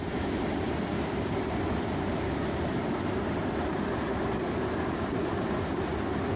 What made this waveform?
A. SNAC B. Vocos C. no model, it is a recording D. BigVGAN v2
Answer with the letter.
C